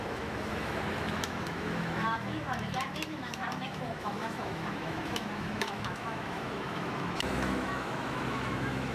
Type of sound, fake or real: fake